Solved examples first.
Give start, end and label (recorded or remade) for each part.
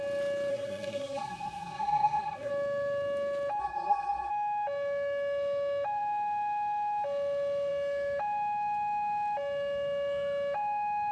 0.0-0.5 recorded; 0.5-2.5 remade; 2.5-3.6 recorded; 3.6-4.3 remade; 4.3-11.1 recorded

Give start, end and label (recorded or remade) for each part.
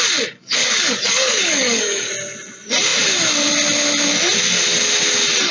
0.0-0.6 recorded; 0.6-2.1 remade; 2.1-5.5 recorded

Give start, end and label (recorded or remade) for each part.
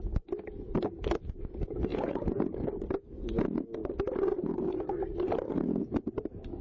0.0-1.9 recorded; 1.9-2.4 remade; 2.4-6.6 recorded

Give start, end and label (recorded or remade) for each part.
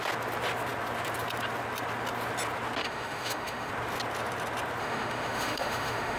0.0-2.8 recorded; 2.8-3.7 remade; 3.7-4.8 recorded; 4.8-6.2 remade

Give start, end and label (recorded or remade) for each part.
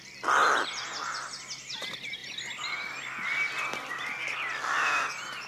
0.0-0.4 recorded; 0.4-1.4 remade; 1.4-5.5 recorded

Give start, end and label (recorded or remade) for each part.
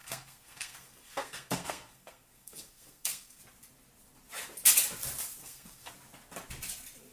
0.0-3.4 remade; 3.4-5.4 recorded; 5.4-5.9 remade; 5.9-7.1 recorded